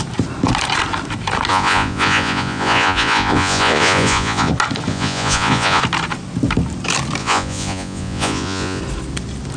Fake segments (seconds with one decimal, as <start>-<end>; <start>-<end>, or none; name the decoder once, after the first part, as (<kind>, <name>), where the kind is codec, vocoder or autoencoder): 1.5-4.5 (vocoder, Vocos); 4.9-5.8; 7.2-8.8